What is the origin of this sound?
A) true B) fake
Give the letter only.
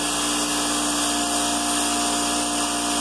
A